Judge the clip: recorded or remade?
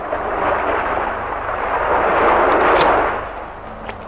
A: recorded